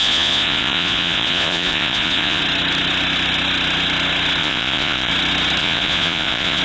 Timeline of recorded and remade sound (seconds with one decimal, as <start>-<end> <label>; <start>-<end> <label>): 0.0-2.4 remade; 2.4-4.4 recorded; 4.4-5.1 remade; 5.1-5.6 recorded; 5.6-6.6 remade